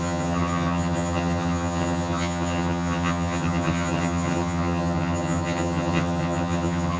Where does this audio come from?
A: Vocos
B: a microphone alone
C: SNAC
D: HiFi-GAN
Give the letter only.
D